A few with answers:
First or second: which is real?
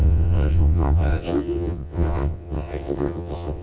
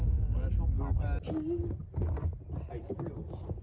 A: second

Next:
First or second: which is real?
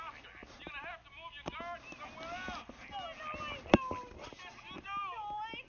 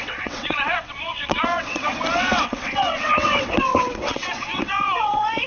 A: first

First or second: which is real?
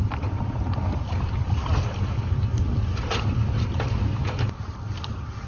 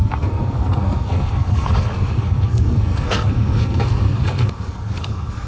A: first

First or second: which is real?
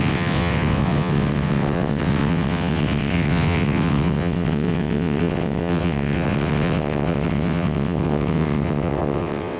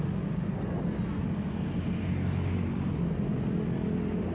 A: second